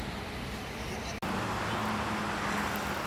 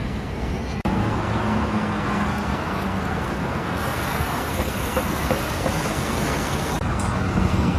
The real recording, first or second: first